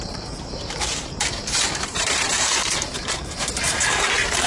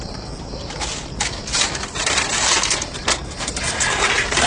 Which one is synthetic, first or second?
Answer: first